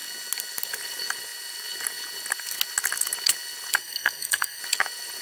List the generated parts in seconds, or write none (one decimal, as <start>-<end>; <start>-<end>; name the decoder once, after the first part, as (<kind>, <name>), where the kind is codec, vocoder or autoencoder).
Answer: 3.8-4.6 (codec, SNAC)